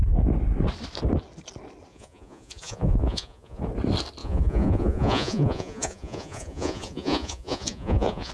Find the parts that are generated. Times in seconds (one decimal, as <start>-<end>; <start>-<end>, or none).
1.9-3.6; 4.2-8.3